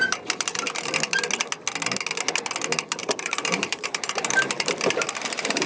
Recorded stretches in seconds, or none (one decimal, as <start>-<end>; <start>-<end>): 0.0-3.0; 4.7-5.7